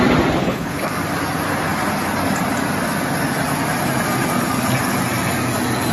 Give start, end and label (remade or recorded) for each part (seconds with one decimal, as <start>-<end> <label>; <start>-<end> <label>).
0.0-0.4 recorded; 0.4-0.9 remade; 0.9-5.9 recorded